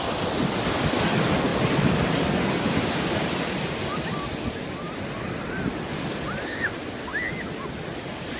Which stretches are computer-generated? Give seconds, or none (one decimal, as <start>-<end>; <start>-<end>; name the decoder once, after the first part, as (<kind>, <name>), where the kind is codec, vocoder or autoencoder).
none